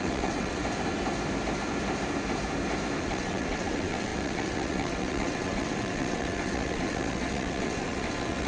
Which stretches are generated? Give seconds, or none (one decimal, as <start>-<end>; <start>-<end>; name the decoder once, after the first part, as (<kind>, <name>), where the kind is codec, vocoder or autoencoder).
0.0-0.6 (vocoder, WaveNeXt); 3.0-8.5